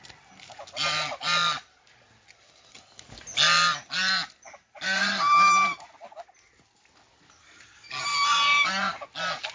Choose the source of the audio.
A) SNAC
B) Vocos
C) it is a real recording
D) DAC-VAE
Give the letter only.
C